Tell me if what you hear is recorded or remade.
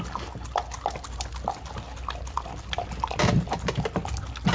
recorded